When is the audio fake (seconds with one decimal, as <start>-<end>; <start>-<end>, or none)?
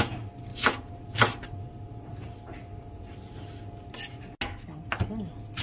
0.5-3.9